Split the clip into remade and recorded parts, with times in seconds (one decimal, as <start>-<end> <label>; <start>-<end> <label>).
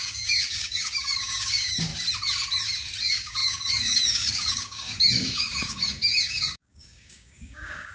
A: 0.0-1.9 remade; 1.9-3.0 recorded; 3.0-7.9 remade